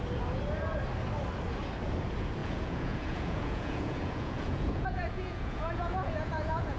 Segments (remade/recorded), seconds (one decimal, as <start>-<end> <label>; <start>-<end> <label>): 0.0-2.4 recorded; 2.4-6.8 remade